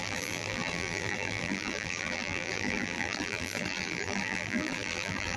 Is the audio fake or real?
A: fake